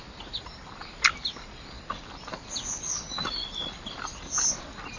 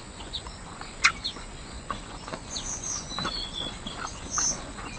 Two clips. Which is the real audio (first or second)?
first